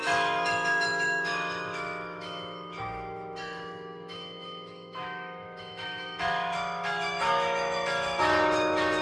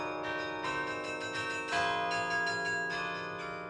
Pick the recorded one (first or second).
second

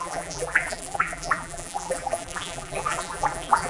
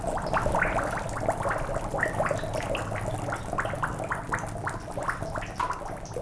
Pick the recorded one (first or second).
second